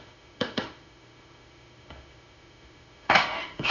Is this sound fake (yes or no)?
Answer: yes